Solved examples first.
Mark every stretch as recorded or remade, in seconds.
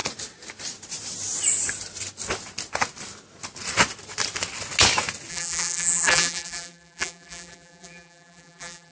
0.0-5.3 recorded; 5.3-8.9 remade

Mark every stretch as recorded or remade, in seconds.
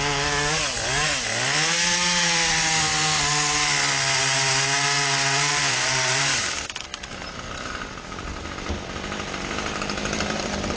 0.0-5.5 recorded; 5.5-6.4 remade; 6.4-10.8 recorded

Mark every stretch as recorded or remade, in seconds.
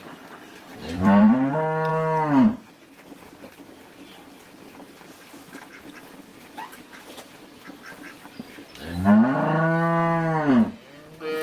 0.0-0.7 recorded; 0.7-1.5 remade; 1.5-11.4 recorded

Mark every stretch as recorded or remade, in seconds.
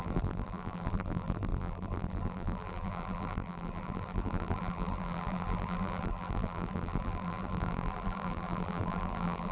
0.0-9.5 remade